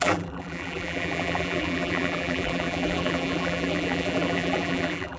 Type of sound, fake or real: fake